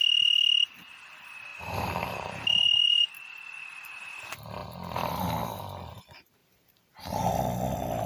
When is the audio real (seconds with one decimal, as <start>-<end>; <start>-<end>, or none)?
0.0-1.5; 3.1-6.4; 7.3-8.1